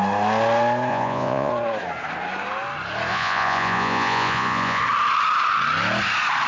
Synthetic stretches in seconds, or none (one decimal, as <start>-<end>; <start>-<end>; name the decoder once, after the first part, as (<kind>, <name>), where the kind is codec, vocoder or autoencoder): 0.9-1.5 (vocoder, Vocos); 3.1-4.8